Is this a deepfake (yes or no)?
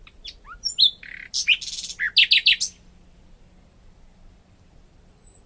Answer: no